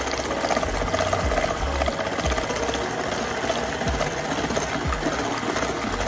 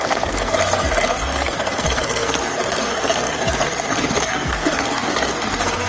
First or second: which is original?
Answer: first